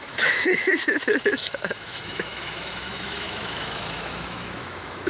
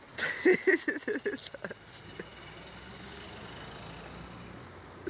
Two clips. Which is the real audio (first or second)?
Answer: second